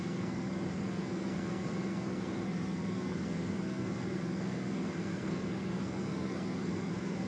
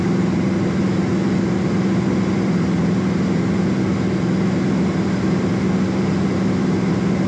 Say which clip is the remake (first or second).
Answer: first